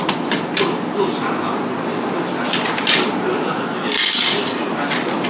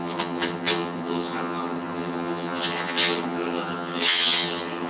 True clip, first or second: first